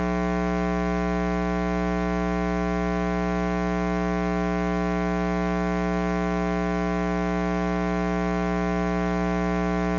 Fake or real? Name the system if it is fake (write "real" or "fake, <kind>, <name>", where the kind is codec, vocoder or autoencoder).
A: real